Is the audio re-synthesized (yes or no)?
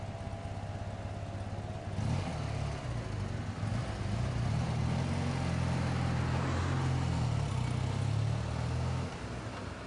no